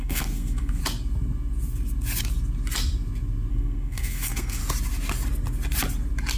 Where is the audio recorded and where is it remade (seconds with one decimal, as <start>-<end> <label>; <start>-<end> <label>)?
0.0-0.8 remade; 0.8-3.5 recorded; 3.5-4.6 remade; 4.6-6.4 recorded